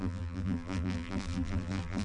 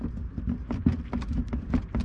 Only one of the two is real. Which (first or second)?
second